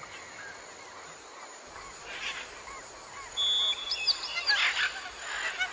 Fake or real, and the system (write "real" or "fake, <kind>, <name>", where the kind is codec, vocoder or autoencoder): real